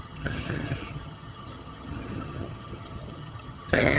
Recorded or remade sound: remade